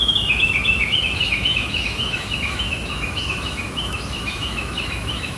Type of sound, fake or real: fake